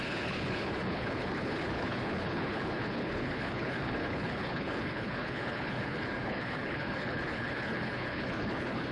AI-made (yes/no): yes